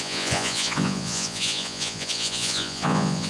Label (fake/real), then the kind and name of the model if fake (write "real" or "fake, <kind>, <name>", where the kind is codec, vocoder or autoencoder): fake, vocoder, Vocos